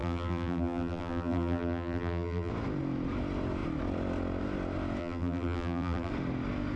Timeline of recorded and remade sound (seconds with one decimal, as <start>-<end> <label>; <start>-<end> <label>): 0.0-2.5 remade; 2.5-5.0 recorded; 5.0-6.1 remade; 6.1-6.8 recorded